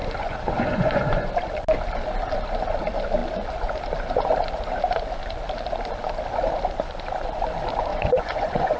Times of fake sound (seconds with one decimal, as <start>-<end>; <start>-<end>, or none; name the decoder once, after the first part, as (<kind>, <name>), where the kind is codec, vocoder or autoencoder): 0.0-1.3 (vocoder, Vocos); 7.9-8.8

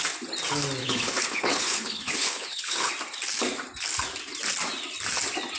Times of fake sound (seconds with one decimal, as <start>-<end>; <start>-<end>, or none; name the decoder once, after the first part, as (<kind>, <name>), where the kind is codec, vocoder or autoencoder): 0.8-2.9 (codec, HILCodec)

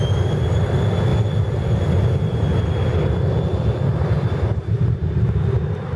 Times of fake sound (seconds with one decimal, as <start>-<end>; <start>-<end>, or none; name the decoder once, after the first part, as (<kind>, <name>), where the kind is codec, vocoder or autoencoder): none

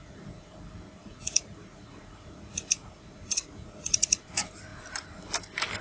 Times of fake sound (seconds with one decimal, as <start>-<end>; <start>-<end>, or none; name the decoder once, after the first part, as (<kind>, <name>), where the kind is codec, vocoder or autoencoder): 0.0-0.5 (vocoder, Vocos); 1.0-4.2

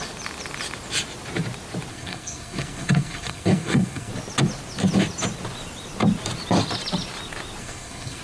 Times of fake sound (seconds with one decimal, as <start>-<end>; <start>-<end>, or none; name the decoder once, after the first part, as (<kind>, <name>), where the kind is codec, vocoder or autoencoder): 1.9-4.1 (codec, SNAC); 7.6-8.2